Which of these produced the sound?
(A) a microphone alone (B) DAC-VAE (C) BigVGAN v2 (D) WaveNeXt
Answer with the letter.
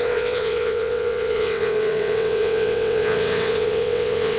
D